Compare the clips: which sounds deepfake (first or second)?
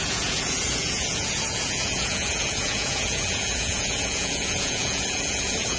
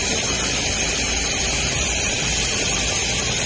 first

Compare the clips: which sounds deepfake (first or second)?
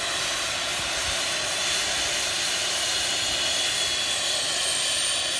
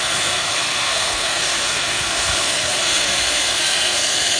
second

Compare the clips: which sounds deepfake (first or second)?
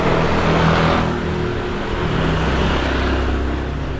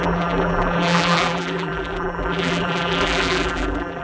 second